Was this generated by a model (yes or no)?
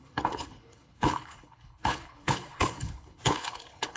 yes